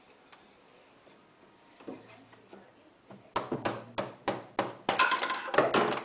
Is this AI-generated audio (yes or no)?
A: no